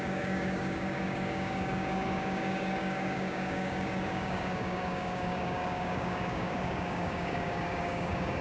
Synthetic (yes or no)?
yes